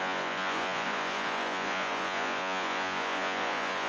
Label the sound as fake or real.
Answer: fake